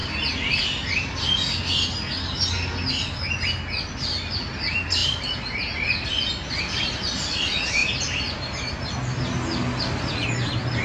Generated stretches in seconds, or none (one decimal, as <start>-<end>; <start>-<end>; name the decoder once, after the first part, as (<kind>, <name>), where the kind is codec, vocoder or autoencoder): none